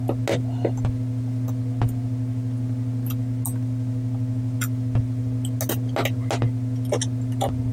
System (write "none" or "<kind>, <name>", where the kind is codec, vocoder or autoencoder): none